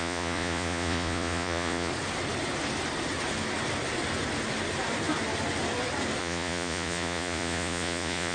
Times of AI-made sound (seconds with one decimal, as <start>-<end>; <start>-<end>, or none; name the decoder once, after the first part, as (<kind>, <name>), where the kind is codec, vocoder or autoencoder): 0.0-1.9 (vocoder, Vocos); 6.2-8.3